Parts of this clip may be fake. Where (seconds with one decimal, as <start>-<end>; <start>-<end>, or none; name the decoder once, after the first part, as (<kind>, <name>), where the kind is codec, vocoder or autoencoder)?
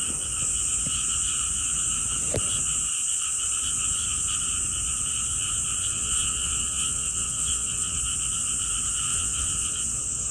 5.9-8.0 (vocoder, WaveNeXt); 9.1-10.3